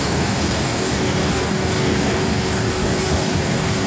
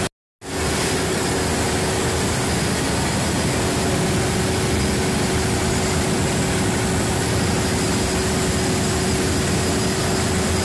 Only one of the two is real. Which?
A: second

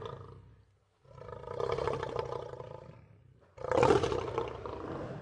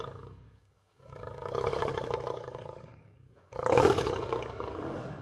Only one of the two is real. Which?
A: first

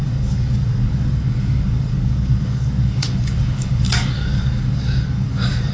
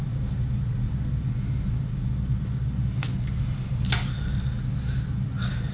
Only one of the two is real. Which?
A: second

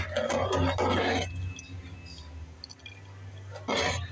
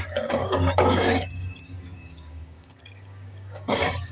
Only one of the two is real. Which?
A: first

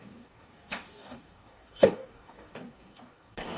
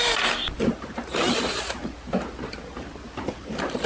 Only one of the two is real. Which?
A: second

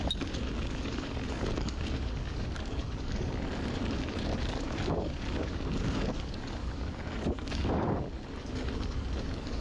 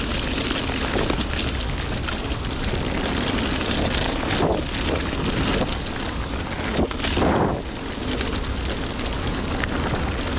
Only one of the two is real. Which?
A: second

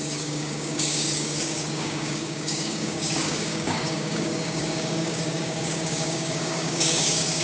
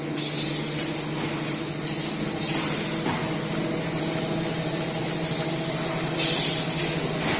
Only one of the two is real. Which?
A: second